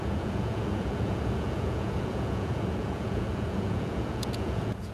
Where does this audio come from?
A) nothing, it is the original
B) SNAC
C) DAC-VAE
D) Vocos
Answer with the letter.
D